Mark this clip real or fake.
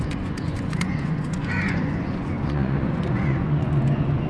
fake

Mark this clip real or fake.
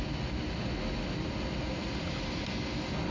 real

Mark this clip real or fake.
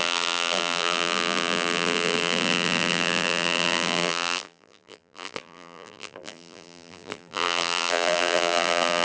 fake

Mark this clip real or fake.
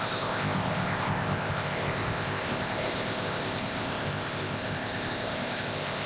fake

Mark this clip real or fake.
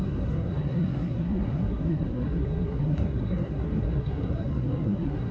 fake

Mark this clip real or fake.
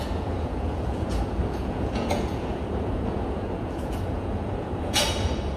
fake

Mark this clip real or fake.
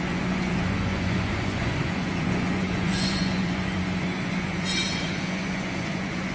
fake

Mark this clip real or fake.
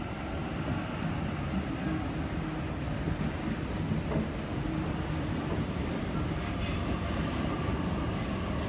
real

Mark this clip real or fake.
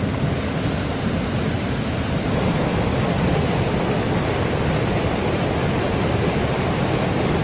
real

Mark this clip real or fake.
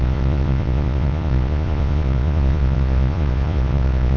fake